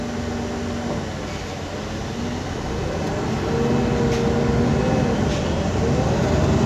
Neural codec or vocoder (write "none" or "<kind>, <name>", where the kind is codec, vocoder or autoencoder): none